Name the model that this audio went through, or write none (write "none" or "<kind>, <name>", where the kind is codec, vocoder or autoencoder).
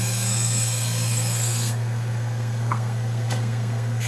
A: codec, SNAC